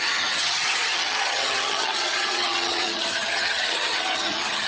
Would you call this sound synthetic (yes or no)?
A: yes